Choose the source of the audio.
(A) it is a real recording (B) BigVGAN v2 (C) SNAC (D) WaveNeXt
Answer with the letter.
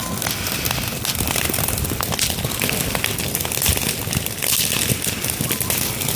A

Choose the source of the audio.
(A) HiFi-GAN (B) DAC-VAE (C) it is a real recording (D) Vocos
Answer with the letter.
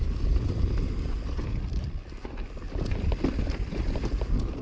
C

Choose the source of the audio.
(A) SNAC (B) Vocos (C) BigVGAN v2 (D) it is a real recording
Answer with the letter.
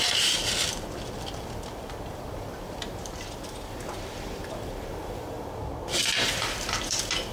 C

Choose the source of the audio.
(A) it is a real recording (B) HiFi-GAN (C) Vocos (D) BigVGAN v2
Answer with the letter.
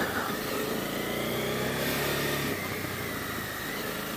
A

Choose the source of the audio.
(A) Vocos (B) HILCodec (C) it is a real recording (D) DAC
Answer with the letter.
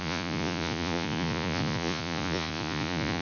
A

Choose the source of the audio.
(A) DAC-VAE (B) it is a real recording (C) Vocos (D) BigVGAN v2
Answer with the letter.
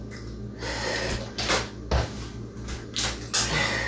B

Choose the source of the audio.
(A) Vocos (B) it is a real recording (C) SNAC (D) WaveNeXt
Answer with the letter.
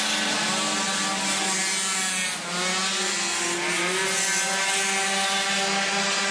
B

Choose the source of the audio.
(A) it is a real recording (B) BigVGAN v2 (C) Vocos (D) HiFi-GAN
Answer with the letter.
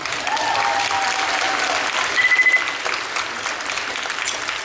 A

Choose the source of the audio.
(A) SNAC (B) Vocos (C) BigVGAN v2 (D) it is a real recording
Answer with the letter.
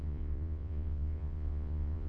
B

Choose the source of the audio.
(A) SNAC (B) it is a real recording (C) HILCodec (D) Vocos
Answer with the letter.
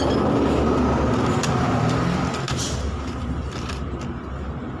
B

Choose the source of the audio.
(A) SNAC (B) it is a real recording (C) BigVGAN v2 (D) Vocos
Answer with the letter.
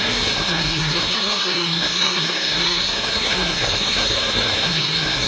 A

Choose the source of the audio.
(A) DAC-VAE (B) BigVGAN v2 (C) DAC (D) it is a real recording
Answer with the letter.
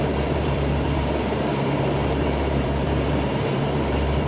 B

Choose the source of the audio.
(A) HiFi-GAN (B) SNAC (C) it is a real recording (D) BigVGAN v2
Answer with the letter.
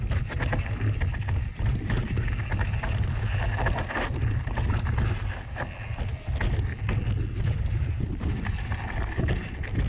C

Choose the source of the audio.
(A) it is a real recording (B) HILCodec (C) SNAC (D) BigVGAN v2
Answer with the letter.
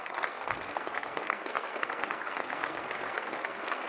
C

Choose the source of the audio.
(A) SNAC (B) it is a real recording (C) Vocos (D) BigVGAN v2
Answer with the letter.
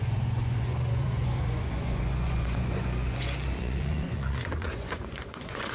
C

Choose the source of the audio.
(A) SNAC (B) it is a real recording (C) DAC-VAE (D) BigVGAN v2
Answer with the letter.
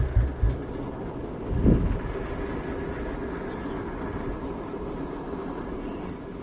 B